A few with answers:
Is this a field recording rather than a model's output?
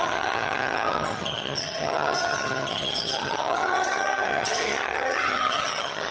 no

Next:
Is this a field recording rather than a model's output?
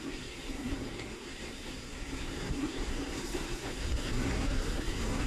no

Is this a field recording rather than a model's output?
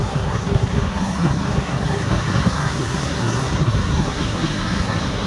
no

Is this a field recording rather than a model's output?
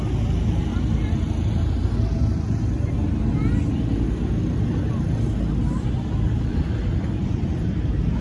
yes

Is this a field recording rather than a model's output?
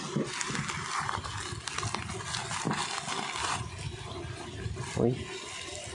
yes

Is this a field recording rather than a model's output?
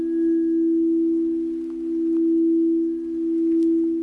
yes